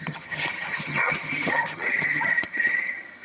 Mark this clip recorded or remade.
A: remade